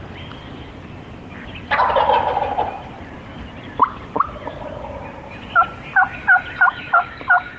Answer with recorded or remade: remade